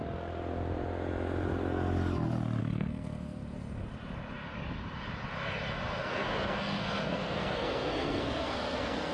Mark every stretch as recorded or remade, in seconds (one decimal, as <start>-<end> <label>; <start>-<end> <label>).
0.0-2.6 recorded; 2.6-3.4 remade; 3.4-6.0 recorded; 6.0-9.1 remade